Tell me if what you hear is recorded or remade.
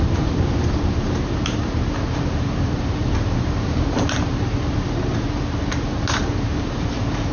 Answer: remade